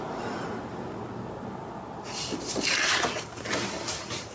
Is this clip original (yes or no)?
yes